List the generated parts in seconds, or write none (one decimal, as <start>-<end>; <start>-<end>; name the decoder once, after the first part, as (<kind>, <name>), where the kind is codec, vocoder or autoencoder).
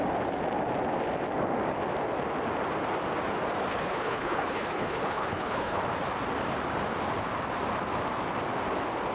3.7-5.8 (codec, HILCodec)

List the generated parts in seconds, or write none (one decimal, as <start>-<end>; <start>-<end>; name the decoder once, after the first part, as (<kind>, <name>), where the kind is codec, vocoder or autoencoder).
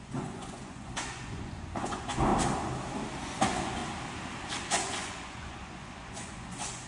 0.0-2.3 (vocoder, Vocos); 3.2-3.8; 4.7-6.9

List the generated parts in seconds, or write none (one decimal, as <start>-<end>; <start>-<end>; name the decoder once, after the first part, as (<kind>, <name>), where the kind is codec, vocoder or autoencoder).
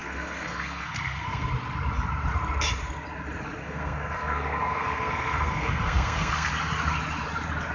0.0-1.5 (codec, SNAC); 3.6-6.5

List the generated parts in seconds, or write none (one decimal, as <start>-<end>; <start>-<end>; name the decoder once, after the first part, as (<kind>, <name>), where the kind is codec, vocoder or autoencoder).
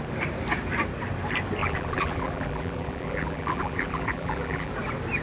1.6-4.7 (vocoder, BigVGAN v2)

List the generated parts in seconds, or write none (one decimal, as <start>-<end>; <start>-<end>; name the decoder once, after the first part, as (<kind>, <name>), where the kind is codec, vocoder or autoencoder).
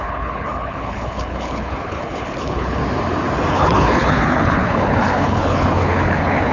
0.0-2.8 (codec, HILCodec); 3.5-6.5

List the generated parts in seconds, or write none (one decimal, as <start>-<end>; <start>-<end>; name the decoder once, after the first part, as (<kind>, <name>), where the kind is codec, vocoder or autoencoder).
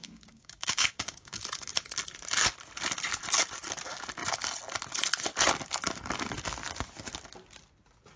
0.0-1.4 (codec, DAC)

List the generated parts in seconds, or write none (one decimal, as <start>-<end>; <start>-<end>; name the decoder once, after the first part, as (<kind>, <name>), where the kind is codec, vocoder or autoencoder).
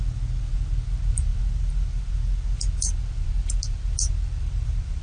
none